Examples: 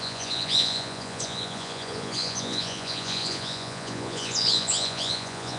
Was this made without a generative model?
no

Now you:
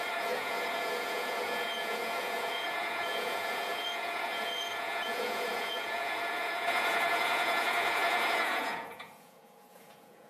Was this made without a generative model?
no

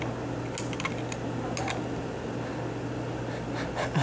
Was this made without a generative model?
yes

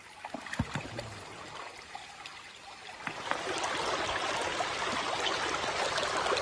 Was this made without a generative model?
yes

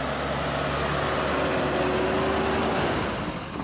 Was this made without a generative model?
yes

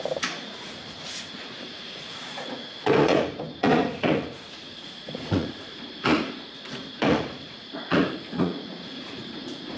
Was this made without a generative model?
no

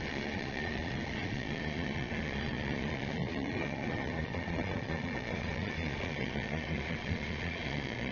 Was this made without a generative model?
no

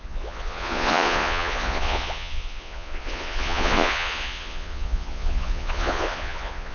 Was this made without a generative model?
no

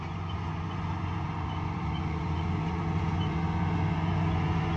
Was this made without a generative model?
no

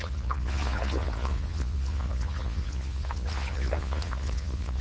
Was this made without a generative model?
no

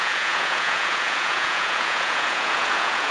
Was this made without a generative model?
no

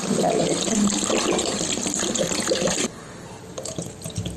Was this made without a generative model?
yes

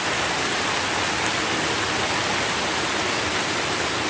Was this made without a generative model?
yes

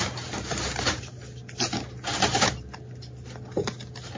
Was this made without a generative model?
yes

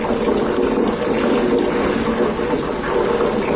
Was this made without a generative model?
yes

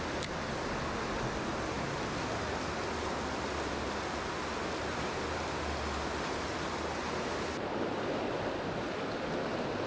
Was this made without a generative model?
yes